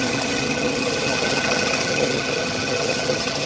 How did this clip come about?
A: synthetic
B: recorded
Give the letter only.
A